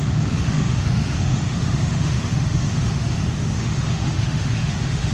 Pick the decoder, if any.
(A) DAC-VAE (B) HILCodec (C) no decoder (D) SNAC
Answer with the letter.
A